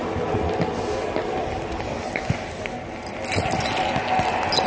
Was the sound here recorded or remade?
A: recorded